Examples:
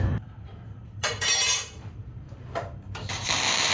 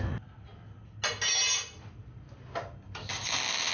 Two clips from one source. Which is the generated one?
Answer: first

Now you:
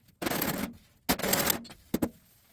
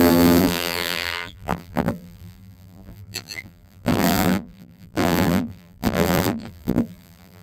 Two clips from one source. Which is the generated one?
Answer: second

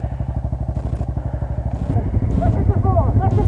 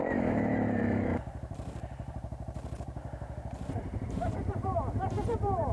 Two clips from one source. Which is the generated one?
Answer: second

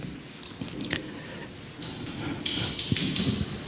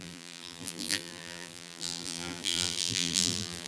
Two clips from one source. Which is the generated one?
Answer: second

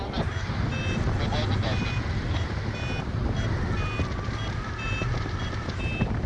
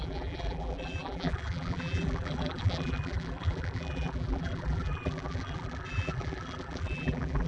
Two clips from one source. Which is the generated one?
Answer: second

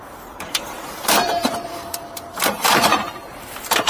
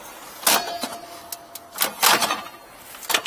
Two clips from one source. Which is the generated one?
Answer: first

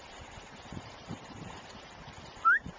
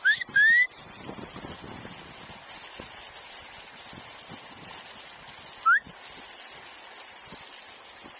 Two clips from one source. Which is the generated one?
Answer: first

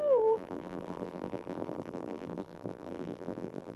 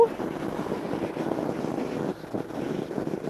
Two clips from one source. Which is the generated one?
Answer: first